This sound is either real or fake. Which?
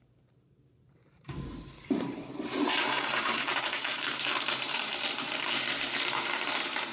fake